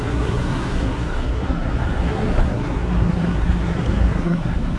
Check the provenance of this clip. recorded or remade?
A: remade